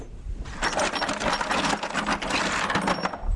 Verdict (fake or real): real